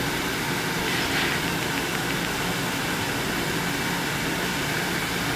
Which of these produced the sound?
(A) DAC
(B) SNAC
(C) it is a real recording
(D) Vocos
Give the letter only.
C